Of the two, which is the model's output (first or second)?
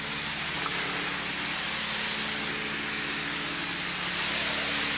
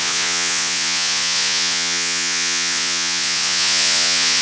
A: second